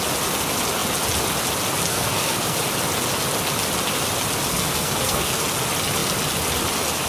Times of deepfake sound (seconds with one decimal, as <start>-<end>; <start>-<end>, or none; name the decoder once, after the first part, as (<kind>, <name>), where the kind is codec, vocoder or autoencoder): 1.9-2.6 (codec, SNAC); 4.5-5.4